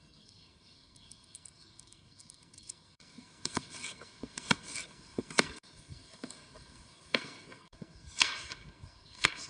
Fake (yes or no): yes